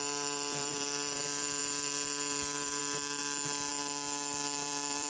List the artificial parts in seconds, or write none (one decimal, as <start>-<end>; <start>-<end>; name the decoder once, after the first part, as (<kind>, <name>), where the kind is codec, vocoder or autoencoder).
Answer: 0.0-3.2 (vocoder, BigVGAN v2); 3.7-5.1

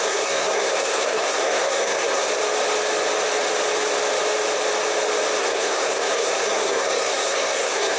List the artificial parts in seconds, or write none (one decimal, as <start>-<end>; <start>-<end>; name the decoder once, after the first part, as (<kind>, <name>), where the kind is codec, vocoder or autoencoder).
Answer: 0.0-2.3 (codec, SNAC); 5.4-8.0